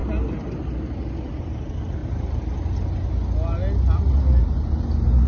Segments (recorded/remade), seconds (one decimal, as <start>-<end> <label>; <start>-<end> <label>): 0.0-5.3 recorded